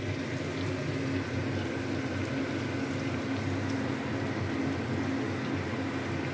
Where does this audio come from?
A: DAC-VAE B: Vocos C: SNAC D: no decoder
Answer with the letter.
D